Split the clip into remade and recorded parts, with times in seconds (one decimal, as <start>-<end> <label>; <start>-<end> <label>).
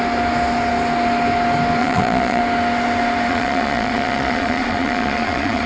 0.0-1.8 recorded; 1.8-2.4 remade; 2.4-3.3 recorded; 3.3-5.7 remade